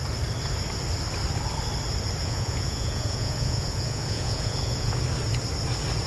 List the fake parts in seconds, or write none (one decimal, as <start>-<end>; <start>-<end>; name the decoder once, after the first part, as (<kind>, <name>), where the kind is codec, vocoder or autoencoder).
2.2-5.0 (vocoder, Vocos)

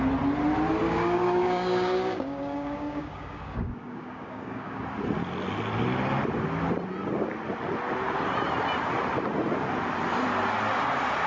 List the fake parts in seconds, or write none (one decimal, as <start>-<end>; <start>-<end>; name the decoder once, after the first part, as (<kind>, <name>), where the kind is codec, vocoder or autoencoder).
0.8-4.8 (codec, DAC)